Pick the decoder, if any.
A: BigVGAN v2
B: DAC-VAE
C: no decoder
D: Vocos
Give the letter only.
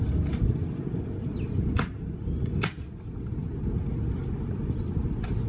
C